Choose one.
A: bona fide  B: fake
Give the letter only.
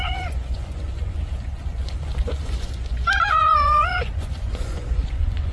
B